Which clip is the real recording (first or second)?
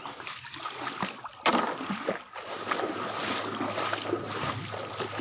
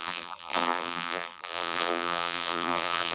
first